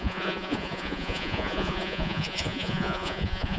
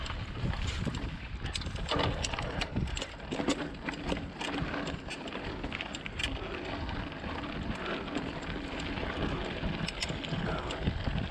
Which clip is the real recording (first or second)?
second